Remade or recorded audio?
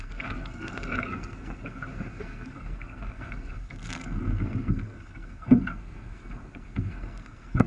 remade